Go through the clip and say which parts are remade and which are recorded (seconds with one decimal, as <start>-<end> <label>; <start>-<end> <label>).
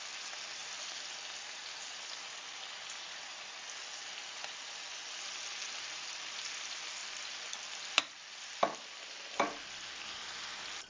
0.0-10.9 recorded